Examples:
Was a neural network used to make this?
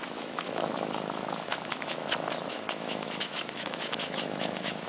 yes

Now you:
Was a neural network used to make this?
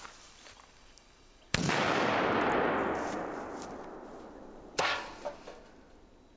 no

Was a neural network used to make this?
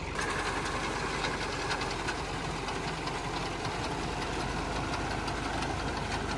no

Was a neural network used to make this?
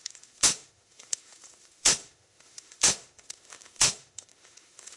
yes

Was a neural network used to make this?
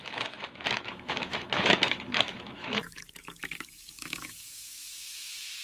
yes